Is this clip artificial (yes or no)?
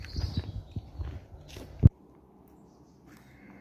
no